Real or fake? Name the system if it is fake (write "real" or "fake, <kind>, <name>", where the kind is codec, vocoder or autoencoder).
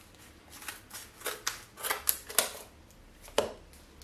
real